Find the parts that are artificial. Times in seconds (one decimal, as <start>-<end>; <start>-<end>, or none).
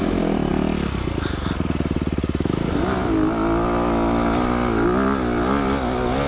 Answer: none